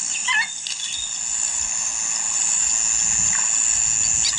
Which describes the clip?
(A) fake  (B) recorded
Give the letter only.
B